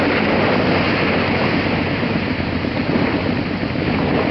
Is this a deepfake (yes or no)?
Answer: no